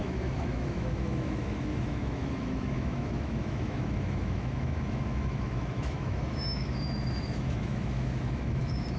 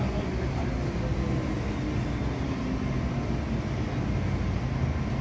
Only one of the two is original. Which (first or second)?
second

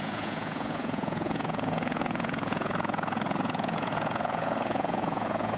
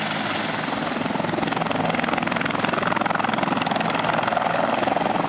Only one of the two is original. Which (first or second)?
second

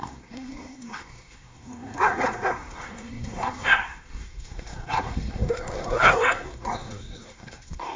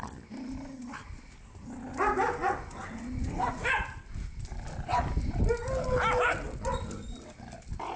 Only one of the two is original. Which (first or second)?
second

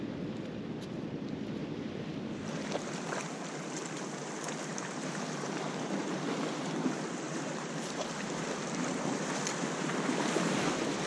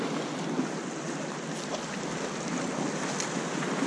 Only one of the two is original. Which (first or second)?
second